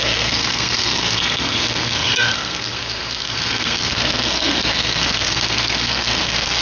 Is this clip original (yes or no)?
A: no